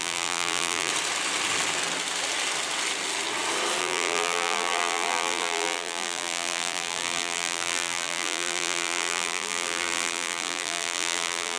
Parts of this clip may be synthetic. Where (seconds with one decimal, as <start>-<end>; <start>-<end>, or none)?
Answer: 0.0-0.9; 3.8-11.6